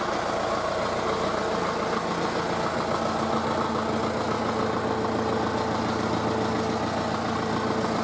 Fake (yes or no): no